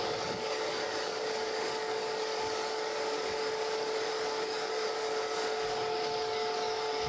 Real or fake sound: fake